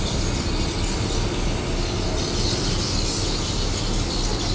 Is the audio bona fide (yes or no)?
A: yes